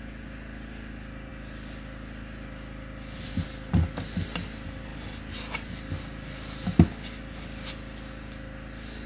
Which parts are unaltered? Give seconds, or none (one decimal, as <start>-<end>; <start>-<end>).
0.0-9.1